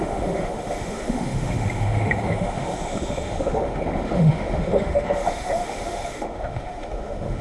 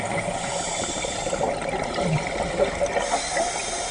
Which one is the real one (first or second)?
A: second